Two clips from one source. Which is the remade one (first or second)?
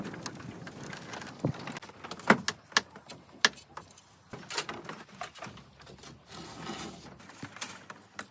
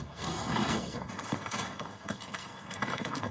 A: second